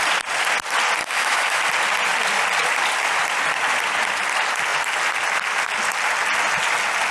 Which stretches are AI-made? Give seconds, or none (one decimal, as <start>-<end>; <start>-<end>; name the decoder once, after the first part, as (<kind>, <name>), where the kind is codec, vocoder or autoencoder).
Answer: 1.0-1.6 (autoencoder, DAC-VAE)